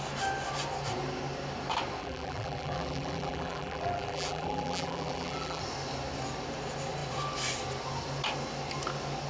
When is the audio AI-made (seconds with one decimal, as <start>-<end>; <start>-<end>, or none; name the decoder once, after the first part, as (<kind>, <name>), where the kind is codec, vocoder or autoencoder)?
2.0-5.6 (vocoder, BigVGAN v2)

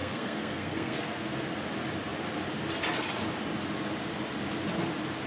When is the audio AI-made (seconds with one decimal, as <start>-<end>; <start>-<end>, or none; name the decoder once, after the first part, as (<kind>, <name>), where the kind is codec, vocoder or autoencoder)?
0.0-1.3 (codec, SNAC)